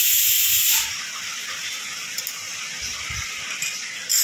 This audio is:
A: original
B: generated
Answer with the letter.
A